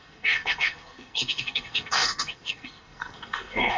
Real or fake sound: fake